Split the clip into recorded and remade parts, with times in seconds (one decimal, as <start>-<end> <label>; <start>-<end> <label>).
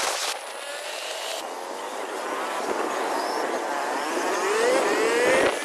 0.0-5.6 recorded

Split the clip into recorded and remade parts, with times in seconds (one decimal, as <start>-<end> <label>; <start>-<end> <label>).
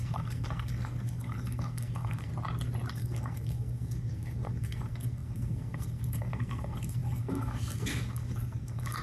0.0-2.3 remade; 2.3-2.9 recorded; 2.9-9.0 remade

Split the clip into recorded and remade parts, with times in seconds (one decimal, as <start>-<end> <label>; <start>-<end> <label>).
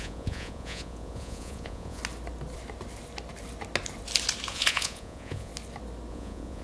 0.0-2.0 remade; 2.0-4.5 recorded; 4.5-5.5 remade; 5.5-6.1 recorded; 6.1-6.6 remade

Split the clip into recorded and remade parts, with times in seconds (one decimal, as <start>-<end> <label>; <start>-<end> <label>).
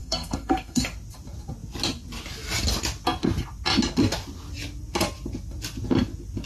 0.0-0.8 remade; 0.8-6.5 recorded